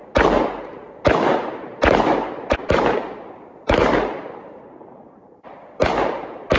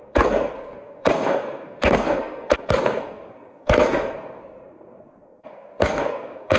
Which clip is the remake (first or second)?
second